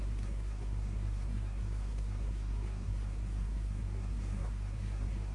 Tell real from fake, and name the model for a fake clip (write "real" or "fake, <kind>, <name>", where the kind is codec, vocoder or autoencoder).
fake, codec, SNAC